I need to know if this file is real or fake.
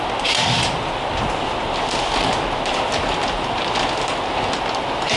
real